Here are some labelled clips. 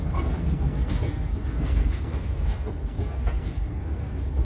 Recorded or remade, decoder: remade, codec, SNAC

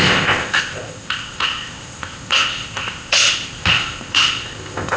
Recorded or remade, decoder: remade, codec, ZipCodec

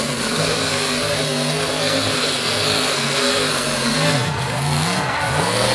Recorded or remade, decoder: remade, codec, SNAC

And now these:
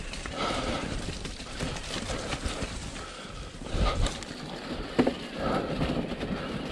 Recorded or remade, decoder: recorded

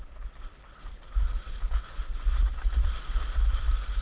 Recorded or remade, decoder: recorded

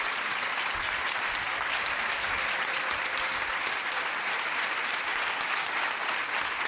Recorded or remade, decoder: recorded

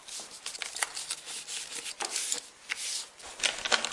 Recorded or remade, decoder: recorded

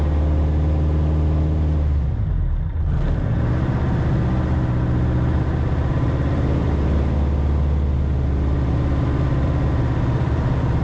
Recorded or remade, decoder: recorded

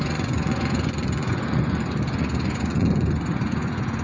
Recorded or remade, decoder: remade, vocoder, Vocos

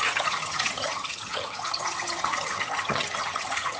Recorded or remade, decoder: remade, vocoder, HiFi-GAN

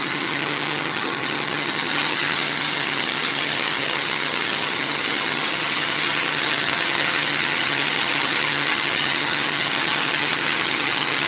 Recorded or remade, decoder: remade, vocoder, HiFi-GAN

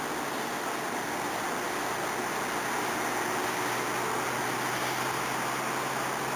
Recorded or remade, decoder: recorded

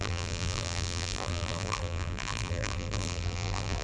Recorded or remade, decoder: remade, vocoder, BigVGAN v2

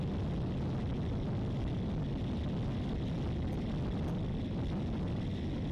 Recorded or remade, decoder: recorded